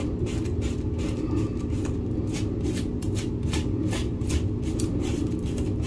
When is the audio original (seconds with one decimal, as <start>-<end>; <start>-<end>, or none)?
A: 0.0-5.9